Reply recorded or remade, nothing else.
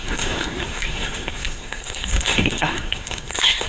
remade